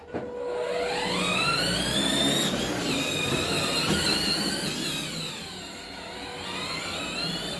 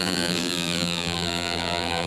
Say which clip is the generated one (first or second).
second